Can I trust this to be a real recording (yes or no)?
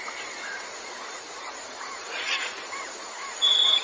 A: no